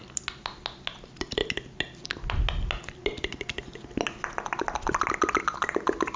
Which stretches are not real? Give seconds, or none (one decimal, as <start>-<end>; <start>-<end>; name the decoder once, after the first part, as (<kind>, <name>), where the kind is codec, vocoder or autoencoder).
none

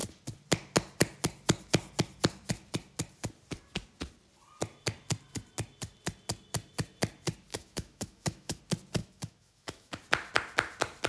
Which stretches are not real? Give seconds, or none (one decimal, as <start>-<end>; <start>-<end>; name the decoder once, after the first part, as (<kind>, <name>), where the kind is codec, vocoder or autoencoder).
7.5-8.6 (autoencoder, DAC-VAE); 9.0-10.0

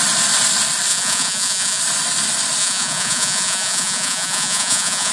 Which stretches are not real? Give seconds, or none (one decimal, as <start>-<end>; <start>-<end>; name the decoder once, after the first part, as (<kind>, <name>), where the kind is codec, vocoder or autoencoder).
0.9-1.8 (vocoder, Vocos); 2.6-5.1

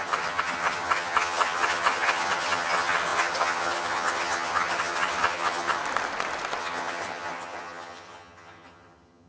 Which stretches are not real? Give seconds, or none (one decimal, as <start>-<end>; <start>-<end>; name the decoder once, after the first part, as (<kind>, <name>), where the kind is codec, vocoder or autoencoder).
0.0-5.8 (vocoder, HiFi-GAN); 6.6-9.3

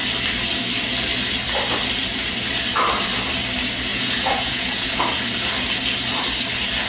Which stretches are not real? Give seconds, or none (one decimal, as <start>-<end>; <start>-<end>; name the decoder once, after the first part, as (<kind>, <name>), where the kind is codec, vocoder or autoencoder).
3.9-5.0 (vocoder, Vocos)

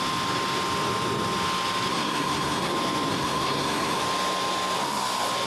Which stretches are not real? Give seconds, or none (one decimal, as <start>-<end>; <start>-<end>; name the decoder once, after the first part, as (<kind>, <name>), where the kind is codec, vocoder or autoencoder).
1.9-2.7 (codec, SNAC); 3.1-4.0